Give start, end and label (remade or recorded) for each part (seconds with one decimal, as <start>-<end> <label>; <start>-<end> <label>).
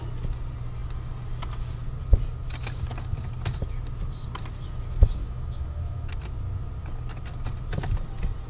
0.0-5.2 recorded; 5.2-6.1 remade; 6.1-8.5 recorded